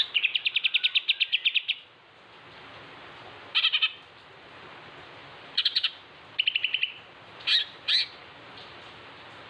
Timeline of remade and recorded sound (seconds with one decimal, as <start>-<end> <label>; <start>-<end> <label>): 0.0-5.2 recorded; 5.2-5.9 remade; 5.9-8.2 recorded; 8.2-9.5 remade